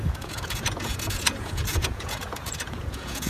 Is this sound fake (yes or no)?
yes